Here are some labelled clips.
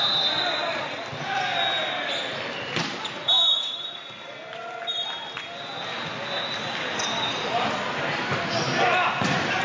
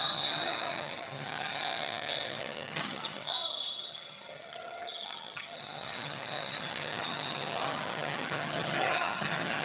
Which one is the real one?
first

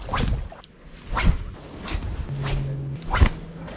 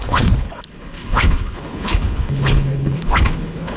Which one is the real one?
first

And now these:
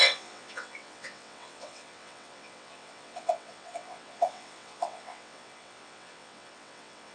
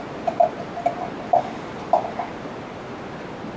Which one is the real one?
second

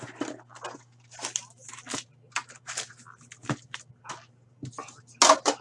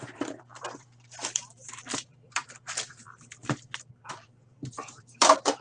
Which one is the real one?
first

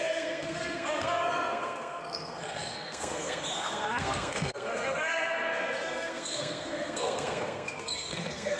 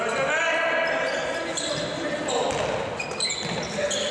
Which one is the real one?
second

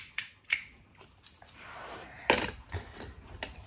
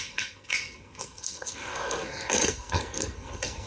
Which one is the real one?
first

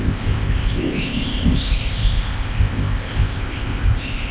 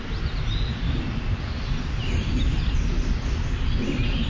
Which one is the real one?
second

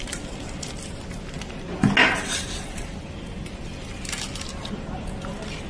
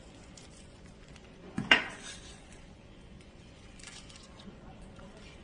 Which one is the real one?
first